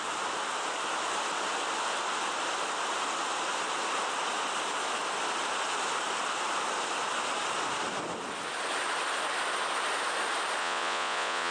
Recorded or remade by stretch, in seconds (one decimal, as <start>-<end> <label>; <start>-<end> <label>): 0.0-10.6 recorded; 10.6-11.5 remade